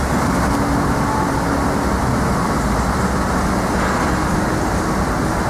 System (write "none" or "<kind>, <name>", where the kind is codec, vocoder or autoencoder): none